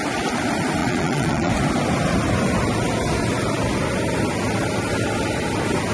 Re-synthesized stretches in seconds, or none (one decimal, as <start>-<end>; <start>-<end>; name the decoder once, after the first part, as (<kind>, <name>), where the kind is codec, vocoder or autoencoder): 0.8-1.5 (vocoder, Vocos)